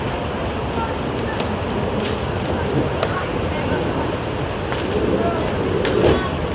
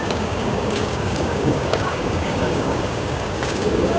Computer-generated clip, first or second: second